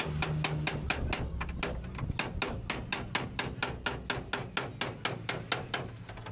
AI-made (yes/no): no